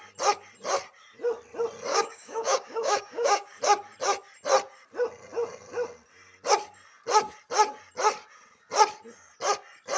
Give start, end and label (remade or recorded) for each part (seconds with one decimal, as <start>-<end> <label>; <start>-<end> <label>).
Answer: 0.0-1.9 recorded; 1.9-3.6 remade; 3.6-10.0 recorded